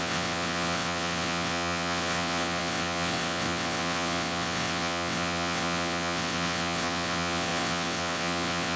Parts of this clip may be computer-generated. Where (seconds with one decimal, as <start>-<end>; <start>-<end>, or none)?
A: 0.0-8.8

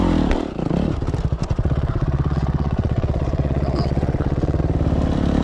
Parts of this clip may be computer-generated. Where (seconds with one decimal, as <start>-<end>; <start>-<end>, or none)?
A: 1.4-4.6

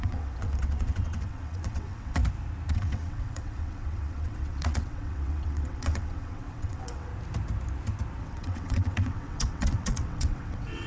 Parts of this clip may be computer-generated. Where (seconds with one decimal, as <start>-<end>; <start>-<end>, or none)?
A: 0.0-2.2; 2.7-7.1; 8.2-10.9

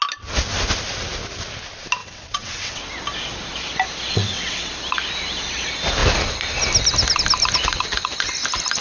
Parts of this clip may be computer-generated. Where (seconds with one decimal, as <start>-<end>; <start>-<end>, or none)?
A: 2.0-2.8; 4.1-4.7

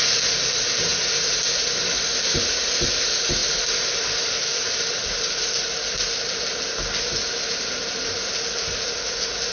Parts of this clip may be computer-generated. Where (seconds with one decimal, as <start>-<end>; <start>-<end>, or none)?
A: none